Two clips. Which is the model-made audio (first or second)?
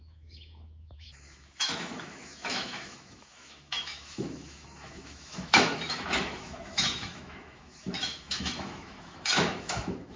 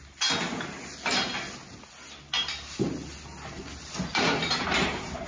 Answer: first